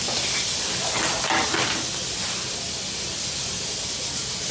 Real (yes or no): yes